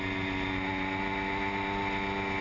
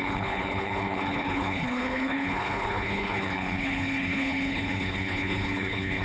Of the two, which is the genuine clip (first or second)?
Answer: first